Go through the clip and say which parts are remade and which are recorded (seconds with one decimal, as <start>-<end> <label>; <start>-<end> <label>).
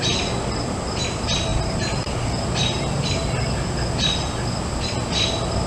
0.0-5.7 recorded